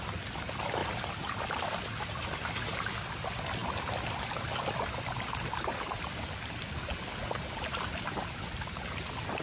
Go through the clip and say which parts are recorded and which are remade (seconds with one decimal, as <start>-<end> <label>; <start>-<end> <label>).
0.0-9.4 recorded